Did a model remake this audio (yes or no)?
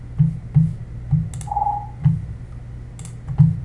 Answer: no